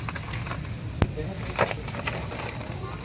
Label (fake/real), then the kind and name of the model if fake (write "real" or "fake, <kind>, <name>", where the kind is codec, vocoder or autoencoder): real